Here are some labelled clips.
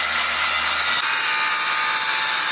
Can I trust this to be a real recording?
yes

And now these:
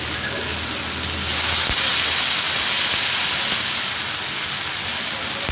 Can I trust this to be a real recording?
yes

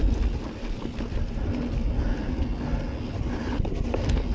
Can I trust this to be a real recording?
yes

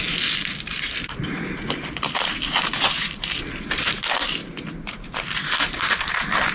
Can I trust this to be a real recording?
yes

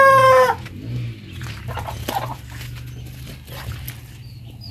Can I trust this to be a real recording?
yes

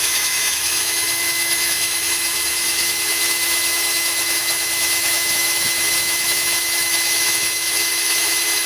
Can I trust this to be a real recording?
no